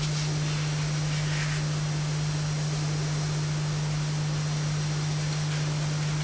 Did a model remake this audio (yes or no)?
no